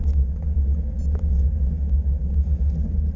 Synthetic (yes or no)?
no